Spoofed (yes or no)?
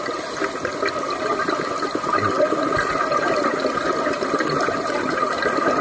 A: no